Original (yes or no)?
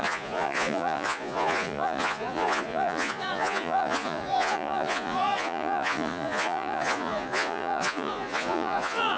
no